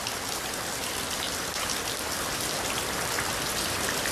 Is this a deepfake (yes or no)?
no